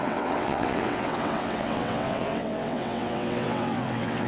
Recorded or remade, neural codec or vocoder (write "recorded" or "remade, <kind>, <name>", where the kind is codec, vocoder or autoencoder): remade, vocoder, WaveNeXt